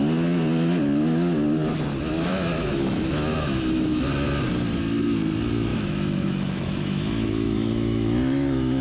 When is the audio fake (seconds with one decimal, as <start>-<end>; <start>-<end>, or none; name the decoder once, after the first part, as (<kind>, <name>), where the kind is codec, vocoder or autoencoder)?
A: 2.3-4.0 (autoencoder, DAC-VAE); 5.7-8.8